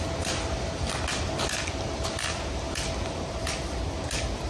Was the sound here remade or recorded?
recorded